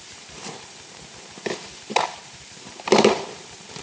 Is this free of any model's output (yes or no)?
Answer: no